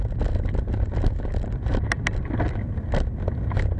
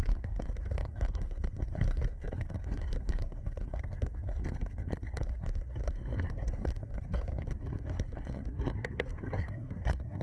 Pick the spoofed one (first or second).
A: second